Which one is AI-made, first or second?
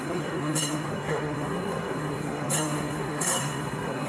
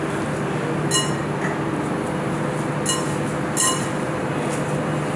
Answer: first